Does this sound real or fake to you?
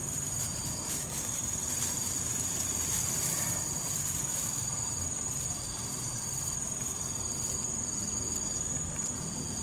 fake